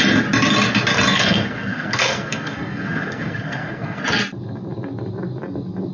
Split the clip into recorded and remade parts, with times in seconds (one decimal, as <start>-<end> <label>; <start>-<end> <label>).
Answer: 0.0-1.1 recorded; 1.1-4.0 remade; 4.0-5.9 recorded

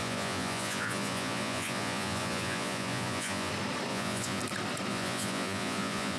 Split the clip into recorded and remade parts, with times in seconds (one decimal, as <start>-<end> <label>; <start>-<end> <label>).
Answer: 0.0-3.5 remade; 3.5-3.9 recorded; 3.9-4.4 remade; 4.4-4.9 recorded; 4.9-6.2 remade

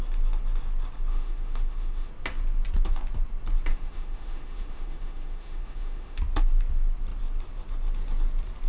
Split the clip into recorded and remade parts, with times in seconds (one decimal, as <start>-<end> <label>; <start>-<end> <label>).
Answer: 0.0-1.1 recorded; 1.1-2.1 remade; 2.1-3.7 recorded; 3.7-6.2 remade; 6.2-8.7 recorded

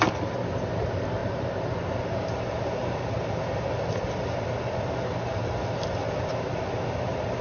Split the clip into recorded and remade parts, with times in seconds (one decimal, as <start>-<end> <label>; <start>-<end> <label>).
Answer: 0.0-7.4 recorded

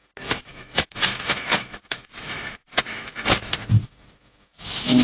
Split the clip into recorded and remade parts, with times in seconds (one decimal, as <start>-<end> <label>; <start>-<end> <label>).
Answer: 0.0-0.5 recorded; 0.5-3.5 remade; 3.5-5.0 recorded